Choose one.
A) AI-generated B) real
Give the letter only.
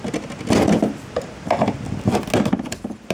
B